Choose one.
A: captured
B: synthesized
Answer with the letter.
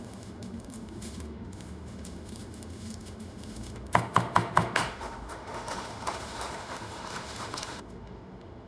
B